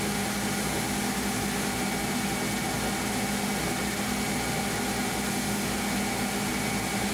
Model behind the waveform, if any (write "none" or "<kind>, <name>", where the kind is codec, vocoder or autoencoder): none